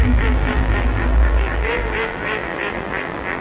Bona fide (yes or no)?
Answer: no